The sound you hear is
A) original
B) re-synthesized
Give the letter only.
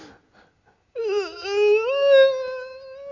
A